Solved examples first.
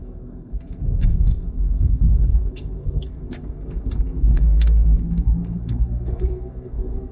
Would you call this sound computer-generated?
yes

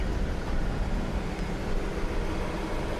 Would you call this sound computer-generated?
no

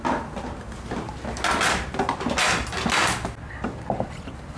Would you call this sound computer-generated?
no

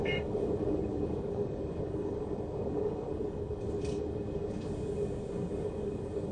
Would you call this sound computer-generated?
yes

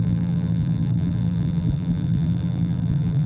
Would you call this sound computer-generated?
yes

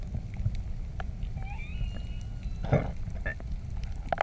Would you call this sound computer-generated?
no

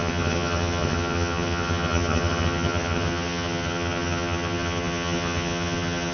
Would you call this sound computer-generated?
yes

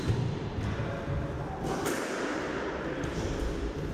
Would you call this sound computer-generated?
no